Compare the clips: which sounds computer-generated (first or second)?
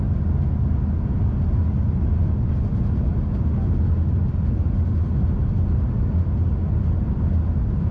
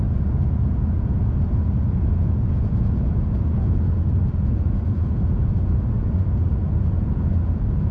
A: second